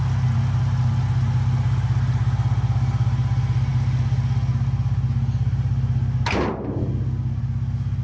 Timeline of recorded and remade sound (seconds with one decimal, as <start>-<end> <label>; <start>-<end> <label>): 0.0-8.0 recorded